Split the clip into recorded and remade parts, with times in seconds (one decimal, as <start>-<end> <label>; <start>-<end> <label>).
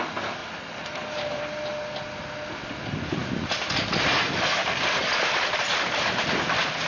0.0-6.9 recorded